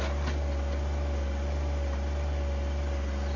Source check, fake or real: real